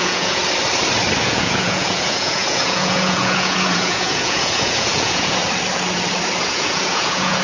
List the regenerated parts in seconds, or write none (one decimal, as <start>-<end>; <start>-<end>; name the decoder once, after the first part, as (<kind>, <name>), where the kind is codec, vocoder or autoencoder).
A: 0.0-0.4 (vocoder, Vocos); 1.2-5.4; 6.4-7.4